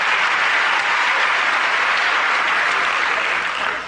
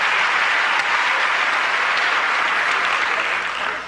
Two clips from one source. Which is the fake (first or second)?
first